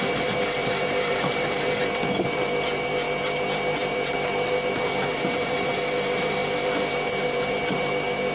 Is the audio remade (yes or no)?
yes